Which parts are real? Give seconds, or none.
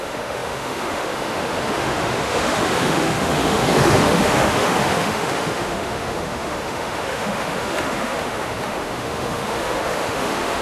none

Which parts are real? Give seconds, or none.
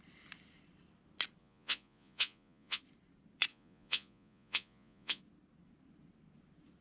0.0-1.4; 2.8-3.5; 5.2-6.8